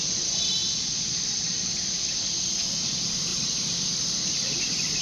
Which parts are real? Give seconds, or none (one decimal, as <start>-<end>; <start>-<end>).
0.0-0.6; 1.3-3.3